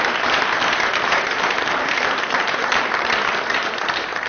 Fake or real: fake